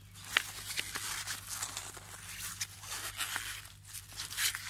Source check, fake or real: real